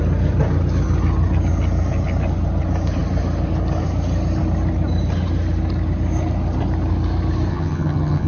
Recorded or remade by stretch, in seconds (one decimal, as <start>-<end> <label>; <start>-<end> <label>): 0.0-7.5 recorded; 7.5-8.3 remade